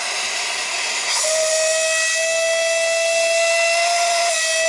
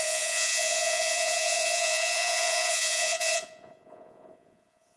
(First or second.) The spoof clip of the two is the second